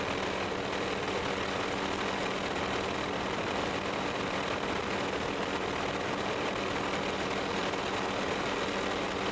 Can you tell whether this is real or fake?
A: real